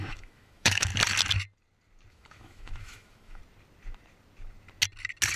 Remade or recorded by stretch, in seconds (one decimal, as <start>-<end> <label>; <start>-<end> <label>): 0.0-0.9 remade; 0.9-2.1 recorded; 2.1-3.4 remade; 3.4-5.4 recorded